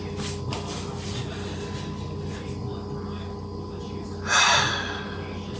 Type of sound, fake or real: real